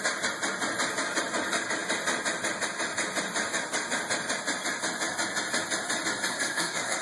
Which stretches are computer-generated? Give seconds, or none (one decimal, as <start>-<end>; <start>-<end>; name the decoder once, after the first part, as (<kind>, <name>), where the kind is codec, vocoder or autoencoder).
6.3-7.0 (codec, SNAC)